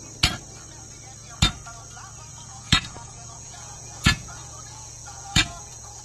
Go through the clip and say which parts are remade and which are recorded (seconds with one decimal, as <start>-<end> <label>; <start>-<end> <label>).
0.0-2.3 recorded; 2.3-6.0 remade

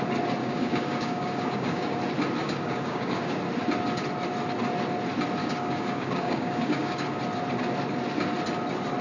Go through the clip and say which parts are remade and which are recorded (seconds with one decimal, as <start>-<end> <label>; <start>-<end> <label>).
0.0-0.4 recorded; 0.4-2.0 remade; 2.0-2.4 recorded; 2.4-3.4 remade; 3.4-5.4 recorded; 5.4-7.2 remade; 7.2-9.0 recorded

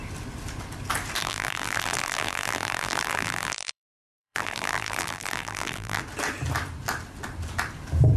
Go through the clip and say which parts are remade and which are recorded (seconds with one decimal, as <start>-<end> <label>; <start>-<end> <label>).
0.0-1.2 recorded; 1.2-6.0 remade; 6.0-8.2 recorded

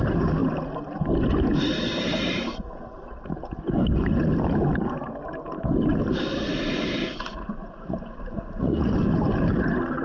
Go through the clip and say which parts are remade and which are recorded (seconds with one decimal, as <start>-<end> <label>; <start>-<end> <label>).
0.0-7.0 recorded; 7.0-8.9 remade; 8.9-10.0 recorded

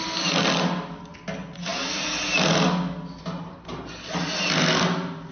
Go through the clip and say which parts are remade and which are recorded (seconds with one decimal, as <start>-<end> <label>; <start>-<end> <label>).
0.0-5.3 recorded

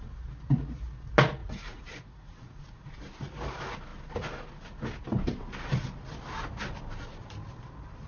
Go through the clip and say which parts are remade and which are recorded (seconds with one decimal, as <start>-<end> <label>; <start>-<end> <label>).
0.0-1.4 recorded; 1.4-2.9 remade; 2.9-8.1 recorded